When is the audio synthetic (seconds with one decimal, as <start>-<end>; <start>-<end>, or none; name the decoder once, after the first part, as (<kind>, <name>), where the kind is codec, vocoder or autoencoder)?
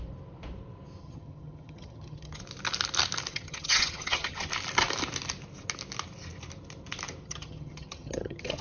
1.0-2.4 (vocoder, HiFi-GAN); 3.3-4.5; 7.2-8.6